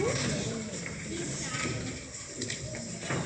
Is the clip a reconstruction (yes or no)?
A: no